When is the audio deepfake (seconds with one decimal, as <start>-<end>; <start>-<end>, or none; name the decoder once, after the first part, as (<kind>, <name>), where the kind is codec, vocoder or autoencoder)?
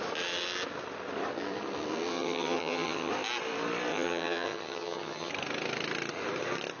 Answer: 2.1-3.1 (vocoder, HiFi-GAN); 3.9-5.3